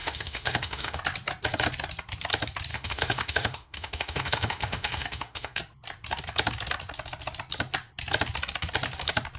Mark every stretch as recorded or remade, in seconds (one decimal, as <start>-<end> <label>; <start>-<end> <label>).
0.0-1.0 remade; 1.0-2.7 recorded; 2.7-5.6 remade; 5.6-9.4 recorded